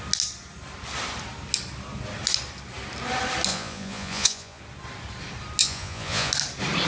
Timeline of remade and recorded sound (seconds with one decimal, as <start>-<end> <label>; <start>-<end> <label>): 0.0-3.5 recorded; 3.5-4.6 remade; 4.6-5.6 recorded; 5.6-6.3 remade; 6.3-6.9 recorded